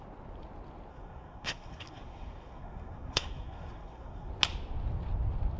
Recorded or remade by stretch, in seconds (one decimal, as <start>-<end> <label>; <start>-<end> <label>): 0.0-0.9 recorded; 0.9-4.3 remade; 4.3-5.6 recorded